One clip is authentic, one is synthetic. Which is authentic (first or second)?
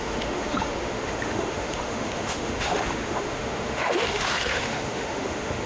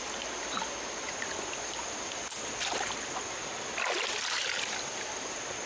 second